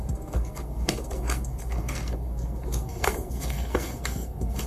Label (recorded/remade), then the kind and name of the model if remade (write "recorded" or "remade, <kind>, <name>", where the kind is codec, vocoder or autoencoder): remade, codec, SNAC